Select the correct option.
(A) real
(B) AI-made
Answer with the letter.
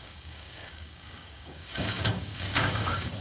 B